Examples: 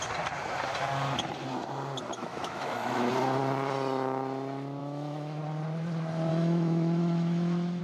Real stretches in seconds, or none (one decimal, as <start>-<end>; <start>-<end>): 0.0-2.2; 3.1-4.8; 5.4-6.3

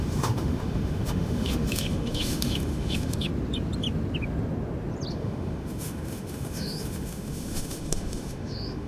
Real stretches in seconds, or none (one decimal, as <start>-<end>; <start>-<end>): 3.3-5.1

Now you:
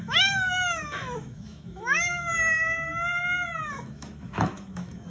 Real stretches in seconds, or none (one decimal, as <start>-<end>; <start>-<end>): 2.3-3.7

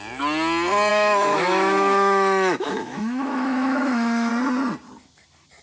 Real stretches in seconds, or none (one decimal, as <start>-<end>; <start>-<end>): 0.0-0.9; 4.3-5.6

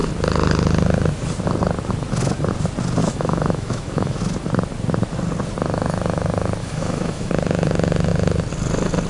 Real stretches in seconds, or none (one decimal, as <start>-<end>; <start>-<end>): 0.0-3.0; 4.2-6.6; 7.3-9.1

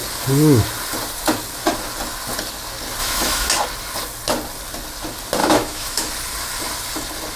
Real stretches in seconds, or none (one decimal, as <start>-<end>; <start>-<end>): 0.0-3.0; 3.5-5.4; 6.1-7.4